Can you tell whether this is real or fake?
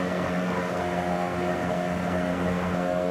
fake